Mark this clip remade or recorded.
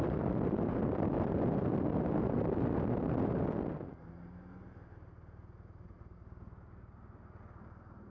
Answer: recorded